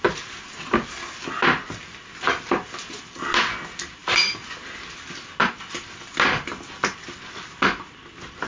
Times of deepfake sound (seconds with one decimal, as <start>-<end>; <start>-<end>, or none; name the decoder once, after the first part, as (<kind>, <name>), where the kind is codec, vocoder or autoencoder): none